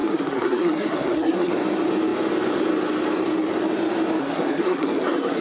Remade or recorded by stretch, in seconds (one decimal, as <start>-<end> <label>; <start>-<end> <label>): 0.0-1.5 remade; 1.5-4.2 recorded; 4.2-5.4 remade